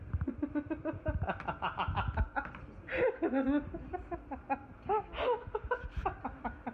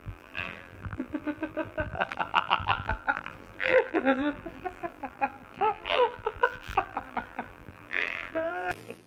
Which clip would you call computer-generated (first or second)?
second